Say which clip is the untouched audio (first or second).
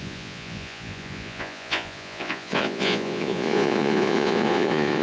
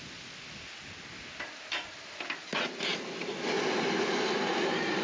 second